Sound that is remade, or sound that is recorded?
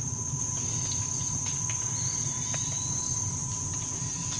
recorded